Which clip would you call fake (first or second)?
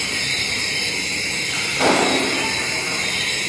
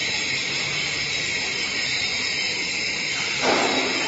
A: second